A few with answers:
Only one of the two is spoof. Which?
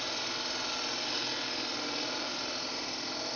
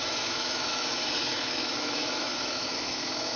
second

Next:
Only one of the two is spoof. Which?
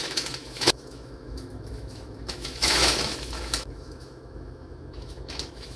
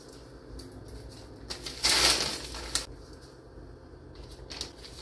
first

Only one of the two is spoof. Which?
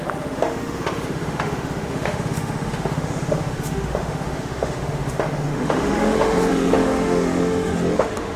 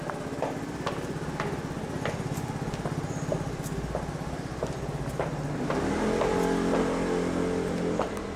first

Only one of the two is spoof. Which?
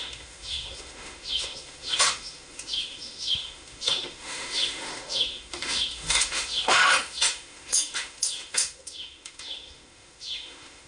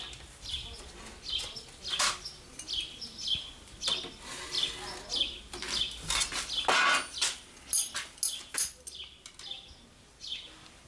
first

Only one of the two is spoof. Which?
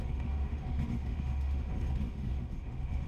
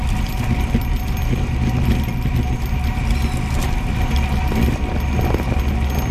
first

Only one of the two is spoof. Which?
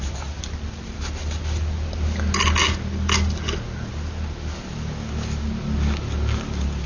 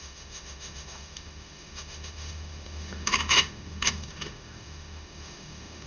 second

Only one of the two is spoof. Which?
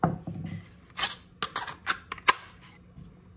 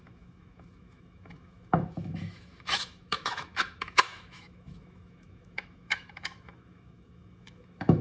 second